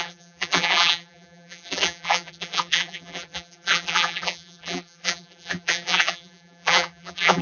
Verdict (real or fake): fake